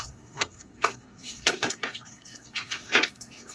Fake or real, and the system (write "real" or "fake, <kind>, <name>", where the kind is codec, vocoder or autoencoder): fake, codec, SNAC